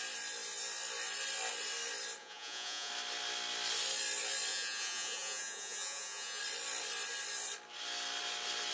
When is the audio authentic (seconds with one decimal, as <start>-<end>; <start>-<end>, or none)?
0.0-2.2; 2.9-4.5; 6.4-8.7